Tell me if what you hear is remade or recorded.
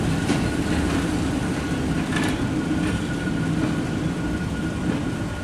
recorded